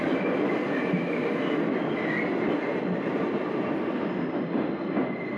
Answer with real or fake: real